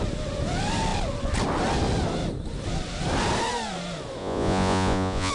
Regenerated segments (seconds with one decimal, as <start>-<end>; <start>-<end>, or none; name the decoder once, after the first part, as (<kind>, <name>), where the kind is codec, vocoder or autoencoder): 4.2-5.3 (vocoder, Vocos)